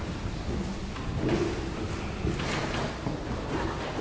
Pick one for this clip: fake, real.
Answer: real